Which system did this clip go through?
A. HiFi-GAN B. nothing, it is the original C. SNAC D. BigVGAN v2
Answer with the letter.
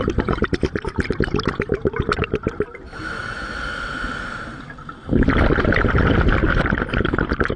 D